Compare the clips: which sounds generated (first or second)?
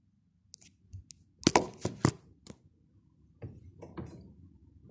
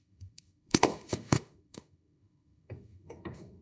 second